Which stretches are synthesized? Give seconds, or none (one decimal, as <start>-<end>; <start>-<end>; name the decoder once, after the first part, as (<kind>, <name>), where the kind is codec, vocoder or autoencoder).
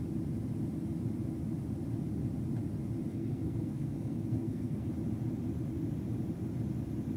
3.1-4.9 (codec, SNAC)